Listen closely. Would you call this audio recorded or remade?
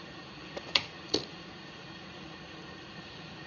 remade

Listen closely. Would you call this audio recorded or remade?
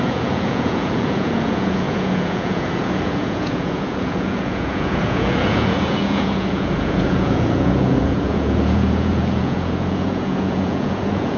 remade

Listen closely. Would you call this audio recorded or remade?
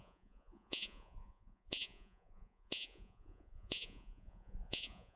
remade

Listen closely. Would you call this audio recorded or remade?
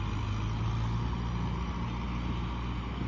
recorded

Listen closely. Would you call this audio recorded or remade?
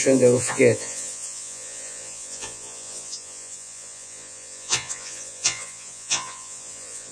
remade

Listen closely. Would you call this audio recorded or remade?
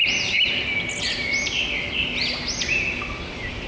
recorded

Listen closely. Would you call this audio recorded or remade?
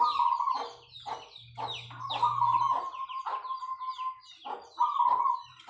recorded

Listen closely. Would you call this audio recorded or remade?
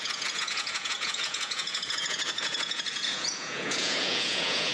remade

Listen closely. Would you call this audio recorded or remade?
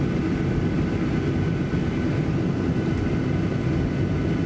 recorded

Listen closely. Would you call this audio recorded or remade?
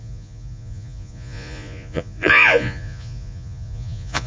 remade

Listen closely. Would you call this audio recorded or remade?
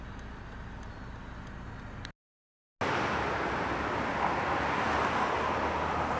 recorded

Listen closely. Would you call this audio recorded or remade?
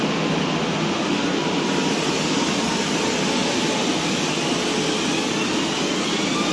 recorded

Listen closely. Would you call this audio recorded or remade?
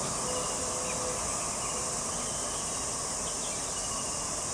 recorded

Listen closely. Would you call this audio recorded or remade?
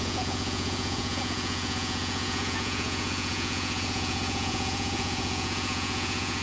remade